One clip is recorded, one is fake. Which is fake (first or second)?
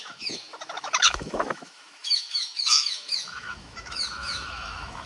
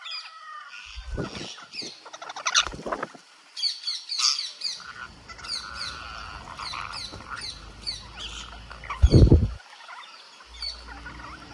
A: first